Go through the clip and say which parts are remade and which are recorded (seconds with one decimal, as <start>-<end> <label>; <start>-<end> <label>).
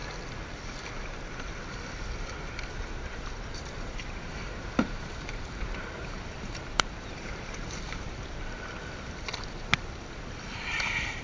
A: 0.0-2.7 recorded; 2.7-9.7 remade; 9.7-10.5 recorded; 10.5-11.2 remade